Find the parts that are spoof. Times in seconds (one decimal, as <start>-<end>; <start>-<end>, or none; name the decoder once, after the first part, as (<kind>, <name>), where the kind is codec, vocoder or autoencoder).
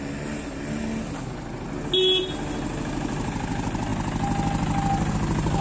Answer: none